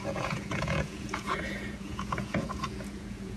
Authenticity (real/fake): fake